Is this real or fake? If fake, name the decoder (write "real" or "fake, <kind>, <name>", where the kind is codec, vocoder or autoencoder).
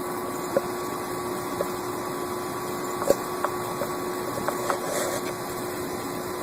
fake, vocoder, BigVGAN v2